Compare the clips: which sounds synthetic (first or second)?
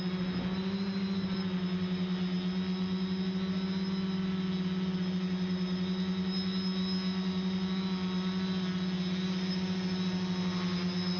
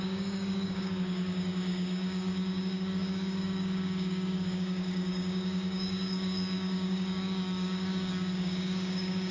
second